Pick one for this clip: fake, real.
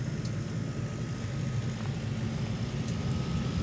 real